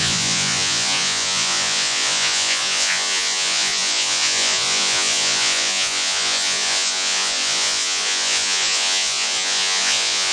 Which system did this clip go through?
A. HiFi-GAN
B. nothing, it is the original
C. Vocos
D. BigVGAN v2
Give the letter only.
C